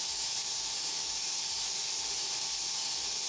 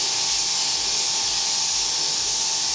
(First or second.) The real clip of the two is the second